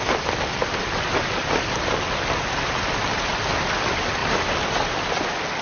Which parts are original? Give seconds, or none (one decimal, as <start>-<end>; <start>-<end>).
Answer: 0.0-5.6